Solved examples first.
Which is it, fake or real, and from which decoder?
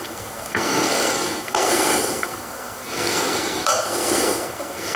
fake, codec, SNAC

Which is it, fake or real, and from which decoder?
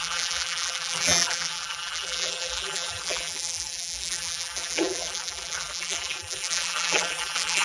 fake, vocoder, BigVGAN v2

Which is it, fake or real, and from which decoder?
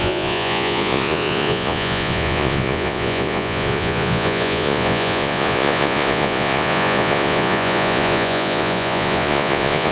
fake, vocoder, Vocos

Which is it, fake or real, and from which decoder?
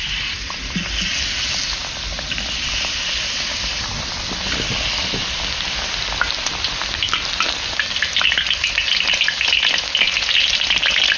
real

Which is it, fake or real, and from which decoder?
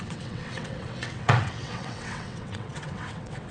fake, vocoder, WaveNeXt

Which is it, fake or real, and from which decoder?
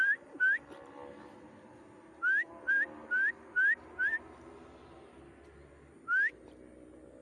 real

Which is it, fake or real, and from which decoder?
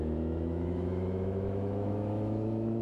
fake, autoencoder, DAC-VAE